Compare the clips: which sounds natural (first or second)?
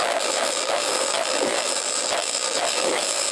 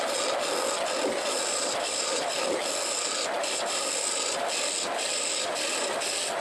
second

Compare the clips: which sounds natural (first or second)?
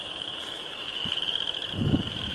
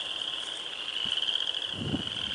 second